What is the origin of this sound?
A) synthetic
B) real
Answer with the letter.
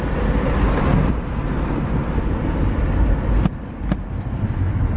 B